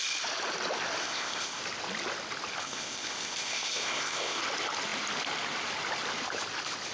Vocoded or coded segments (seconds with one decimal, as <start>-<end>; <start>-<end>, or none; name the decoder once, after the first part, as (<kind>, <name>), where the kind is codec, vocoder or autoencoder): 1.0-1.6 (codec, ZipCodec); 2.6-4.4